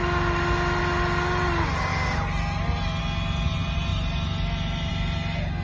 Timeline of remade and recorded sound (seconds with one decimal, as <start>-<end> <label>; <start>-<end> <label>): 0.0-5.6 recorded